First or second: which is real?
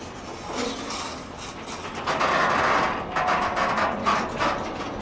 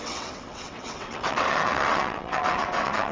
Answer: first